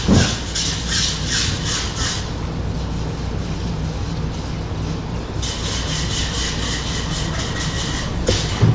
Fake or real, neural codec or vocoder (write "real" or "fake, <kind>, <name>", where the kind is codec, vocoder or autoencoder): real